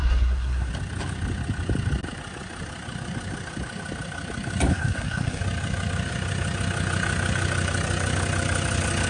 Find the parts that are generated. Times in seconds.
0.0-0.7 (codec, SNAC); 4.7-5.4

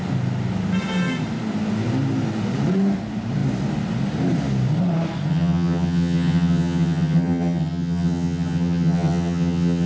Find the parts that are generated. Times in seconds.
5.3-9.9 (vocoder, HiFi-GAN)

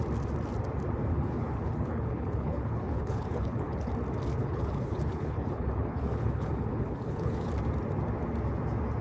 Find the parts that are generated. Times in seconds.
1.1-3.9 (codec, HILCodec); 4.4-7.5